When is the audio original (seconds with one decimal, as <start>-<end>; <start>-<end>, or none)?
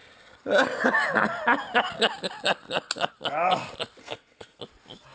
0.0-4.0; 4.6-5.1